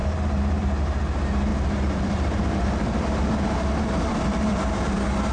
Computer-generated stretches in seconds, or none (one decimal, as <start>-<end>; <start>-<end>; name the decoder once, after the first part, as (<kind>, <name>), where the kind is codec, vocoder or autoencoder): 0.0-0.8 (vocoder, BigVGAN v2); 1.5-4.7